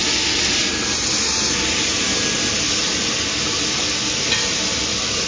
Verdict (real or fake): real